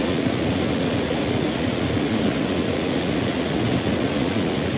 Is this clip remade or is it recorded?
remade